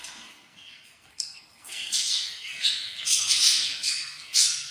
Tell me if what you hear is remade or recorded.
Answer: remade